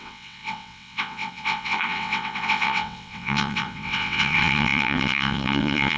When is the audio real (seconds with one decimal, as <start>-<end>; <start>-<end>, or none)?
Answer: none